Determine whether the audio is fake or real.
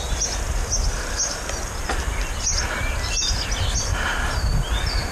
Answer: real